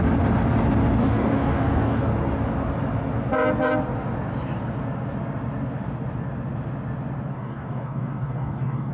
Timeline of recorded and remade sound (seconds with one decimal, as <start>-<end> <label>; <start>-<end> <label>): 0.0-1.0 recorded; 1.0-2.0 remade; 2.0-7.3 recorded; 7.3-8.9 remade